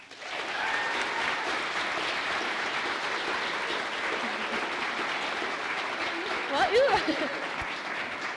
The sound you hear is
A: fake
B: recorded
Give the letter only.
B